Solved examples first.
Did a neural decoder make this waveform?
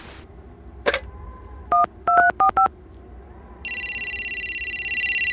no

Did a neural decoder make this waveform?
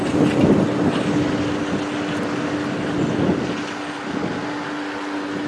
no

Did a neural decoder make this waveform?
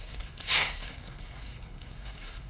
yes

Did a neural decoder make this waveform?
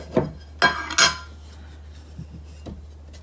no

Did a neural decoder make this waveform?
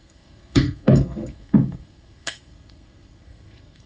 yes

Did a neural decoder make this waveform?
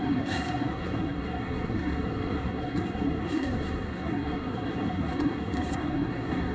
yes